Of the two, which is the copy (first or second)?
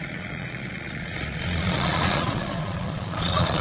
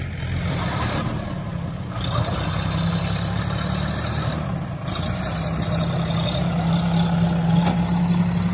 first